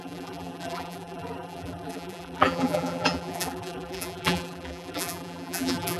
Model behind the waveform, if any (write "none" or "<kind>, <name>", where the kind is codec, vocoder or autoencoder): vocoder, BigVGAN v2